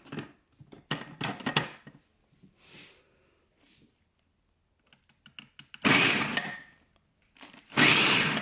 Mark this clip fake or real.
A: real